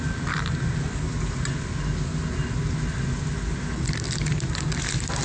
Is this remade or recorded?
recorded